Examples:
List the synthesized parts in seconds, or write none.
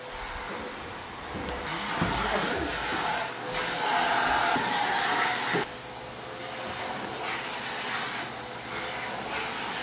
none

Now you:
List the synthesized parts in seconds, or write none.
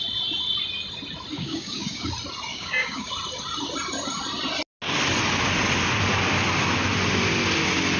1.3-2.1 (codec, DAC); 2.5-3.1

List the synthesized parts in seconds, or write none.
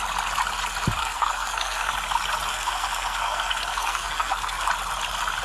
1.0-1.9 (codec, SNAC); 2.5-4.7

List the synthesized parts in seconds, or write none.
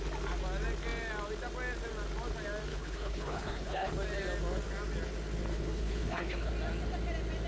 2.7-3.9 (codec, HILCodec); 5.5-6.5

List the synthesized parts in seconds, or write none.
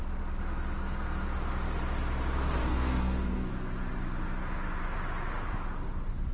2.6-3.5 (codec, SNAC)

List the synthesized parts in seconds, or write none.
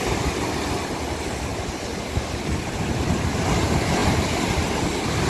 none